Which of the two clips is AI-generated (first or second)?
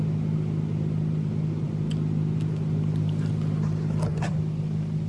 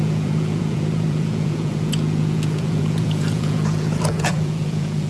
second